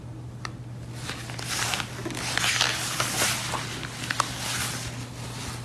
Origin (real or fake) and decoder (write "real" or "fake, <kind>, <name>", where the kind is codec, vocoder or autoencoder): real